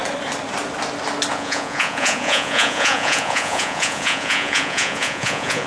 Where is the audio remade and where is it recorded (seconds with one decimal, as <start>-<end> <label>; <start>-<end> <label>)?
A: 0.0-1.3 recorded; 1.3-5.7 remade